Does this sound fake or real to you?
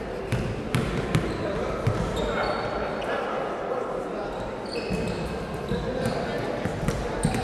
real